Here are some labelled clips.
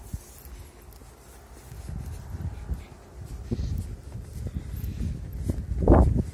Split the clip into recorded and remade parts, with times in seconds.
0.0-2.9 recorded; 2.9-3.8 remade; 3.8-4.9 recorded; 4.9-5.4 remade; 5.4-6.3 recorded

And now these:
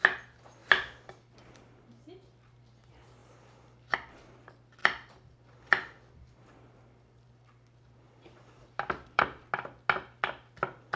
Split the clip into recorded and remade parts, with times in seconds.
0.0-0.6 recorded; 0.6-1.8 remade; 1.8-3.2 recorded; 3.2-4.3 remade; 4.3-4.8 recorded; 4.8-9.2 remade; 9.2-11.0 recorded

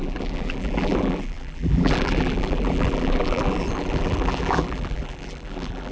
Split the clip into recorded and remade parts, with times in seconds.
0.0-5.9 remade

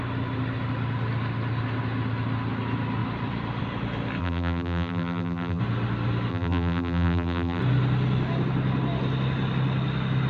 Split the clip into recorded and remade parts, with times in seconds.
0.0-4.2 recorded; 4.2-5.6 remade; 5.6-6.3 recorded; 6.3-7.6 remade; 7.6-10.3 recorded

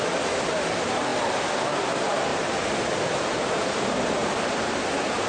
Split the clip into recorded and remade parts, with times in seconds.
0.0-2.3 recorded; 2.3-3.6 remade; 3.6-5.3 recorded

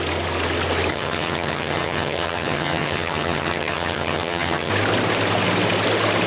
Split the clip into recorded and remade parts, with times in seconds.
0.0-0.9 recorded; 0.9-4.7 remade; 4.7-6.3 recorded